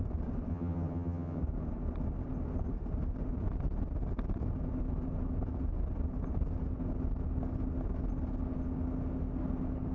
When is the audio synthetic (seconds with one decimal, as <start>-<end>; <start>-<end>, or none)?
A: 0.5-1.4